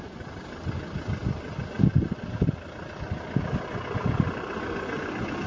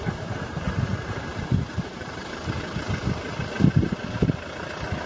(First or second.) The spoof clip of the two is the second